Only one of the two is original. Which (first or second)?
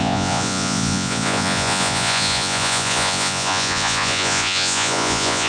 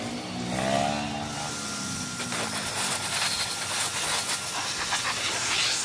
second